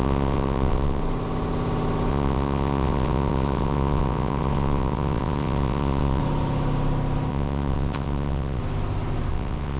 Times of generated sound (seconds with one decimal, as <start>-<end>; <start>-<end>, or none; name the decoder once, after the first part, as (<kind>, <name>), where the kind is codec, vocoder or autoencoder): 0.0-1.0 (vocoder, WaveNeXt); 2.1-6.2; 7.3-8.6; 9.3-9.8